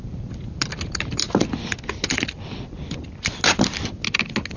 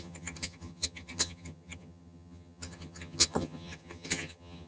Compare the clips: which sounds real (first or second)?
first